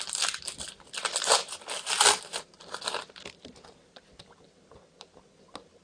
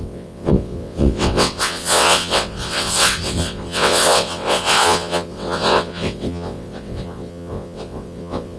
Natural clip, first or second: first